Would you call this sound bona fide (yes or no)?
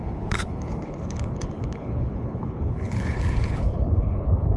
no